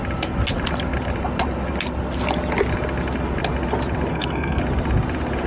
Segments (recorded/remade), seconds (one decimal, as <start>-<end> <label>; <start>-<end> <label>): 0.0-4.1 recorded; 4.1-4.6 remade; 4.6-5.5 recorded